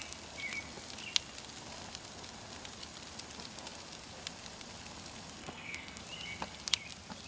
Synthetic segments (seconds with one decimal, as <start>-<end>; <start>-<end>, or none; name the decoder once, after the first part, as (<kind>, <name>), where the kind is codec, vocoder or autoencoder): 5.4-6.0 (codec, SNAC)